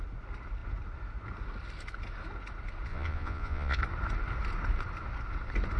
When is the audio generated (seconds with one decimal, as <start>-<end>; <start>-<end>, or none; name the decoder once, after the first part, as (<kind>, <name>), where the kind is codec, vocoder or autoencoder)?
2.9-3.8 (vocoder, Vocos)